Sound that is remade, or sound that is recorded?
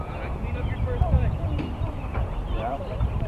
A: remade